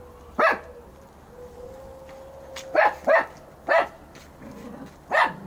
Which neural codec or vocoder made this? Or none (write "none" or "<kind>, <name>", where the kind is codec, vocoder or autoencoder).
none